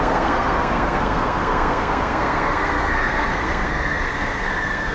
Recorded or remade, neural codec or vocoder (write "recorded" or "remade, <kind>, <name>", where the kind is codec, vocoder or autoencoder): remade, codec, SNAC